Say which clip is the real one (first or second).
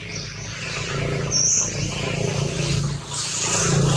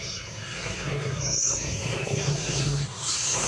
first